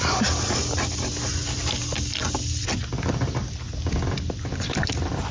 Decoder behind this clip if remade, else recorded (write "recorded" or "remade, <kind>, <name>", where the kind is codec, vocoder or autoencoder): recorded